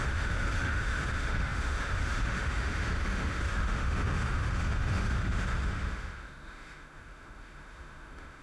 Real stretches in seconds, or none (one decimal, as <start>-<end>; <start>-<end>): none